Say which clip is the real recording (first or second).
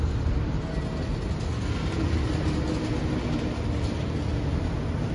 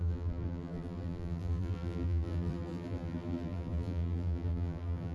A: first